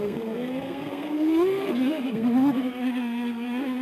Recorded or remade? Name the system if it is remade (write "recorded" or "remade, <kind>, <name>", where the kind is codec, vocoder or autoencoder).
remade, codec, SNAC